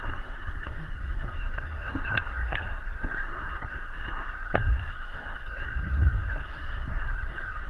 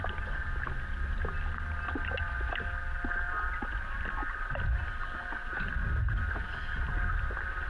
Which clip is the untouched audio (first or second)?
second